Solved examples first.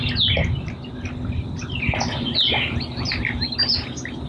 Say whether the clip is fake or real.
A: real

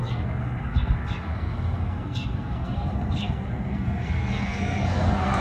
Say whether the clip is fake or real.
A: fake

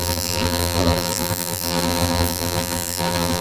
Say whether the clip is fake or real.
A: fake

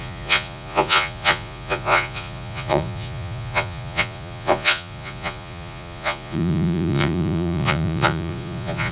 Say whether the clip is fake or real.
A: fake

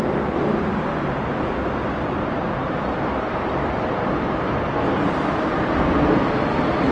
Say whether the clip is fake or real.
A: real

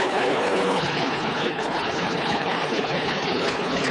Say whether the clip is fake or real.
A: fake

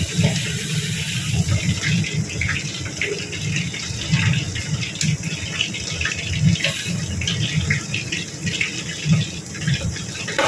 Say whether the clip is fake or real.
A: real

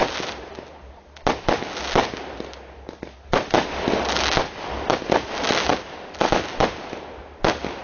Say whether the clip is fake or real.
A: real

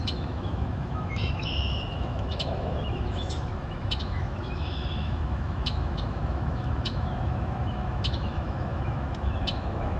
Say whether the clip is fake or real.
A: fake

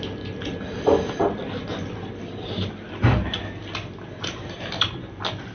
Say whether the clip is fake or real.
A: real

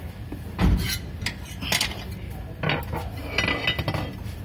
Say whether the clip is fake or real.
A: real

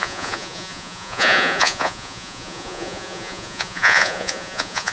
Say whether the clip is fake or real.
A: fake